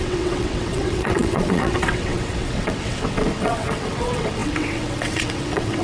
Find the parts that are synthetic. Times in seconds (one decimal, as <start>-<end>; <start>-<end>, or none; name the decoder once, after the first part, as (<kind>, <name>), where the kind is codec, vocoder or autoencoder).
0.0-5.8 (vocoder, WaveNeXt)